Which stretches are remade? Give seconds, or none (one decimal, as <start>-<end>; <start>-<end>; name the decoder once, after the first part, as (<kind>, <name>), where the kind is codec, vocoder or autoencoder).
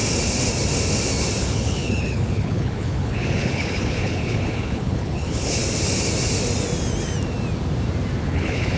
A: 1.4-5.6 (codec, HILCodec); 8.2-8.8